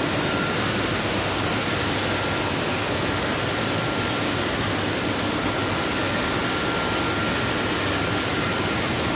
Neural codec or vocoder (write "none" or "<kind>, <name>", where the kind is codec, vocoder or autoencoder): none